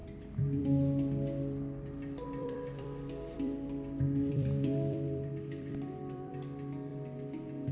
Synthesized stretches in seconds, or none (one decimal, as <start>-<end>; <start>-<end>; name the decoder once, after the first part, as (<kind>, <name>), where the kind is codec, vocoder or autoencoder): 0.0-0.6 (vocoder, BigVGAN v2); 2.4-6.3